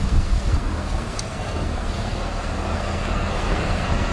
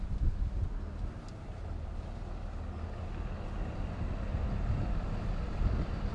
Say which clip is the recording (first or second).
second